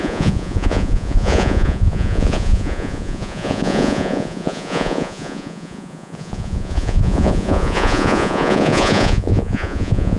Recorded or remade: remade